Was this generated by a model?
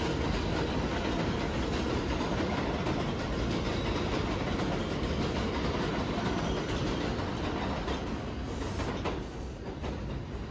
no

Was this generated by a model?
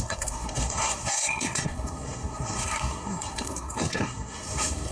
yes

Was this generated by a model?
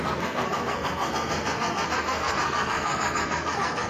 yes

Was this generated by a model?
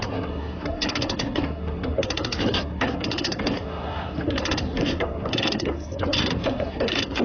yes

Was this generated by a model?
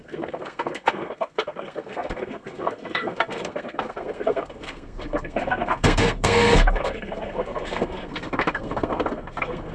yes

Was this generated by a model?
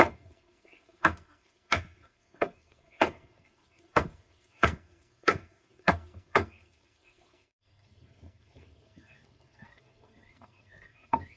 yes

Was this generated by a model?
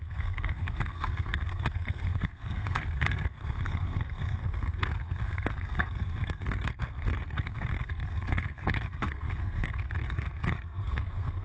yes